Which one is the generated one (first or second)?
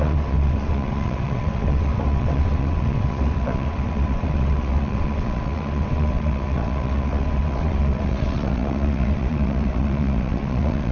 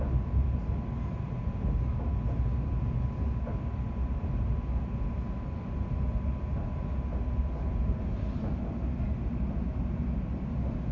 first